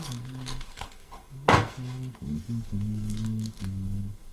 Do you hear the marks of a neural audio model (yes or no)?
yes